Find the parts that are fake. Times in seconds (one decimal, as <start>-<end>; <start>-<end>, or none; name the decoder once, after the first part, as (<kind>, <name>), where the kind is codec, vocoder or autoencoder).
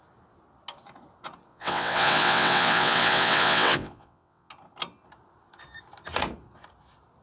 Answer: 1.5-4.5 (vocoder, WaveNeXt)